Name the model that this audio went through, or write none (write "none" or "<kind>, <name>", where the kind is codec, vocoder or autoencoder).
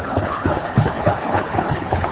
codec, HILCodec